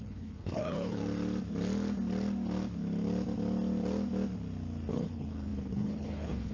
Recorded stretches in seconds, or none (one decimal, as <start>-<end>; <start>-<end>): 1.0-4.9